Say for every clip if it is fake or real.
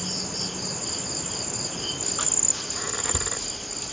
real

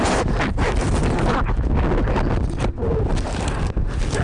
real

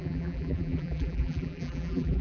fake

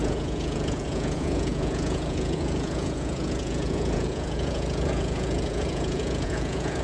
fake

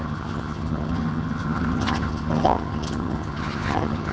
fake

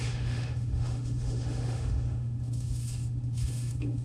fake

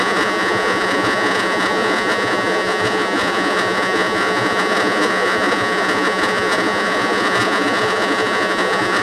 fake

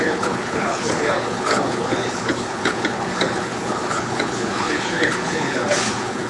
fake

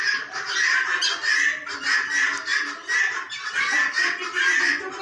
real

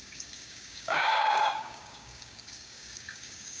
fake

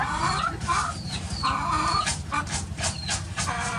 real